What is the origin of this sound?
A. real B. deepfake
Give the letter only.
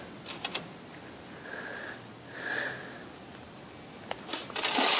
A